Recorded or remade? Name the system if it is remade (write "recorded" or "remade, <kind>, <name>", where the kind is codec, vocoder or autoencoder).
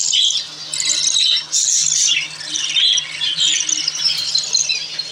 recorded